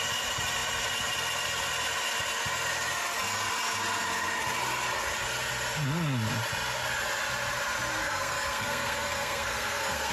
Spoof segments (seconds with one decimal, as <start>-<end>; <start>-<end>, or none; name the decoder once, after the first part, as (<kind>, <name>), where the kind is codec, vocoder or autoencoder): 8.0-10.1 (codec, SNAC)